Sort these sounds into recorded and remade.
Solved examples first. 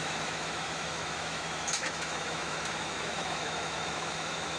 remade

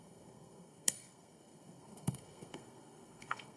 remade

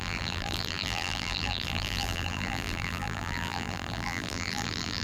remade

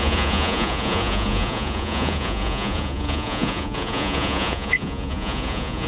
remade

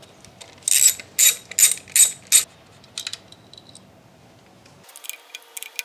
recorded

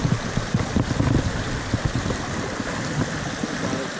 recorded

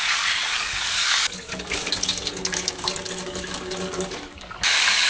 remade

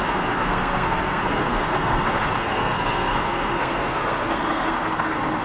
remade